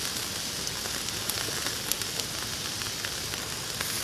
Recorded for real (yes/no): yes